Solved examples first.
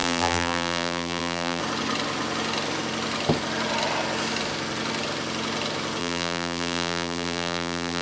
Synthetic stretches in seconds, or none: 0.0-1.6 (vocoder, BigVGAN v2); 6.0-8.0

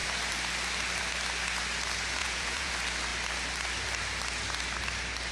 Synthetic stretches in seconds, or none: 2.2-2.7 (vocoder, Vocos)

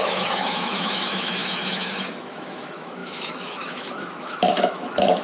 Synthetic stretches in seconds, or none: 0.0-5.2 (autoencoder, DAC-VAE)

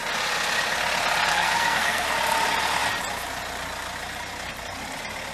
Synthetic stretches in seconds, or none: 1.3-2.1 (codec, SNAC)